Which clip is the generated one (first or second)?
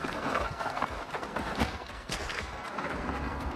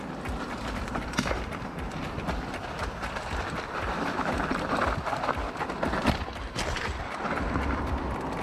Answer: first